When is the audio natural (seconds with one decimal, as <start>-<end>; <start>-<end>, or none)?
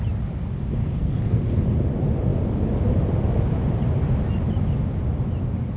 0.0-0.8; 1.4-5.8